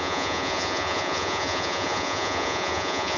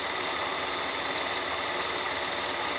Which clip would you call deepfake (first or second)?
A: first